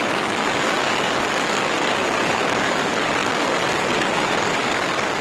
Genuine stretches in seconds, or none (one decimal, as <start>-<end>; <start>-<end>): none